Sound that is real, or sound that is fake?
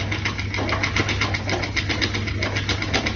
real